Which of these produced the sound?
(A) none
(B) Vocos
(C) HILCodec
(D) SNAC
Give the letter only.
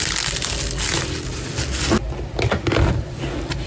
A